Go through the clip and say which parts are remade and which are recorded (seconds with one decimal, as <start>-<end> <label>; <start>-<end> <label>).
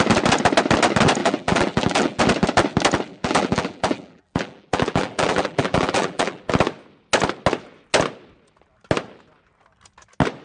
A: 0.0-1.2 recorded; 1.2-2.2 remade; 2.2-3.1 recorded; 3.1-6.5 remade; 6.5-10.4 recorded